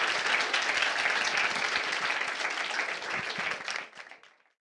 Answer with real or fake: real